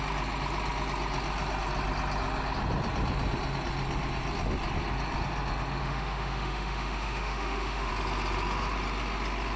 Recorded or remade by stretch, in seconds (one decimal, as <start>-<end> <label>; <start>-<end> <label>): 0.0-5.8 recorded; 5.8-7.9 remade; 7.9-9.6 recorded